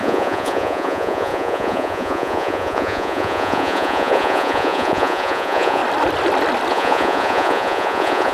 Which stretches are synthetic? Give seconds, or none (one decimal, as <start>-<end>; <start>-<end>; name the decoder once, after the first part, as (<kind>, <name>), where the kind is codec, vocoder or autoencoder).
0.0-5.8 (vocoder, Vocos); 6.7-8.3